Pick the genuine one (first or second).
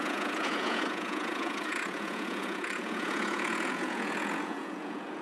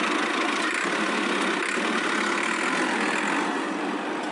second